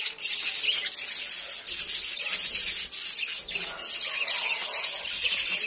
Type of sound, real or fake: real